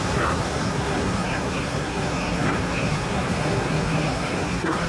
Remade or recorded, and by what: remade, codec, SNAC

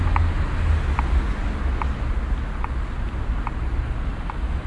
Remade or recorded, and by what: recorded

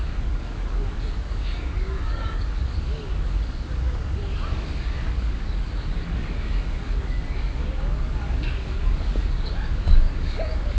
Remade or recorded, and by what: remade, codec, DAC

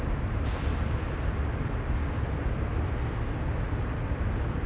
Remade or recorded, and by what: recorded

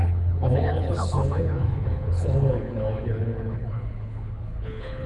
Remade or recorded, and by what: remade, codec, HILCodec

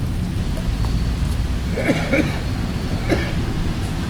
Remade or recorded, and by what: recorded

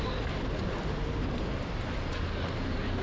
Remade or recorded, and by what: recorded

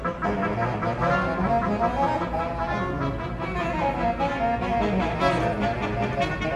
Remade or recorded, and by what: recorded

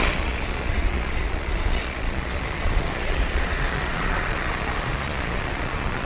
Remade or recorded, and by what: remade, vocoder, Vocos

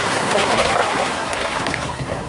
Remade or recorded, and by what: remade, codec, SNAC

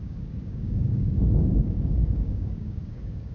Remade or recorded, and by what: remade, codec, DAC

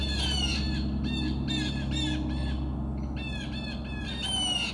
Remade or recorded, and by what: recorded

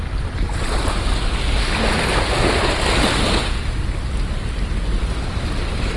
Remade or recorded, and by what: recorded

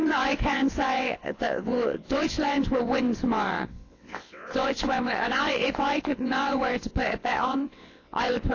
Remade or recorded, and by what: remade, vocoder, WaveNeXt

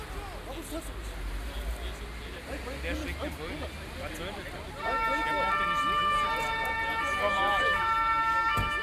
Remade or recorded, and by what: recorded